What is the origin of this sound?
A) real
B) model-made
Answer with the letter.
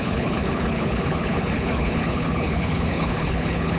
B